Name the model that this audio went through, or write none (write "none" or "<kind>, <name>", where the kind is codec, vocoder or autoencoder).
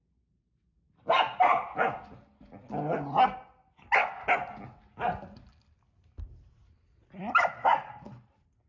none